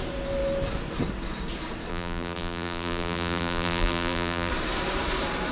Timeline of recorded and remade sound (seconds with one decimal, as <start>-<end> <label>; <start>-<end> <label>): 0.0-1.9 recorded; 1.9-4.5 remade; 4.5-5.5 recorded